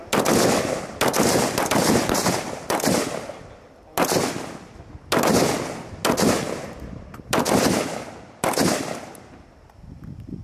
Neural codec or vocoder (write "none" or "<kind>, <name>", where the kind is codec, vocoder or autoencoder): none